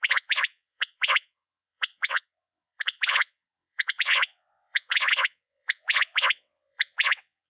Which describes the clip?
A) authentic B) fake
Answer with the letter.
B